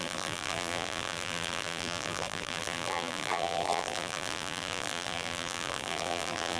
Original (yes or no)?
no